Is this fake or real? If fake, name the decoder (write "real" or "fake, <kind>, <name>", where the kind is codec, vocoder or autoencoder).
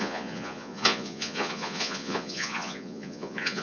fake, vocoder, Vocos